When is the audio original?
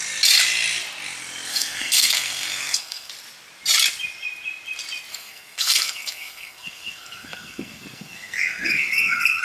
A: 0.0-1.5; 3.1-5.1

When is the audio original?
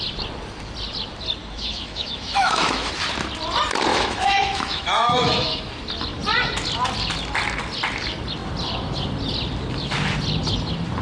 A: 0.0-1.4; 2.9-3.9; 5.6-11.0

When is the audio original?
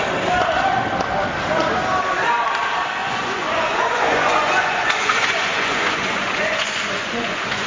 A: 0.0-3.0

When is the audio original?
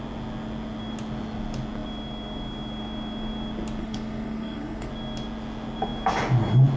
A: 0.0-3.8; 4.9-6.8